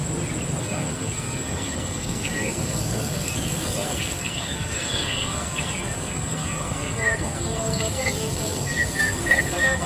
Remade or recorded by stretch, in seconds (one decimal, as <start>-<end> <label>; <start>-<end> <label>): 0.0-0.6 recorded; 0.6-9.9 remade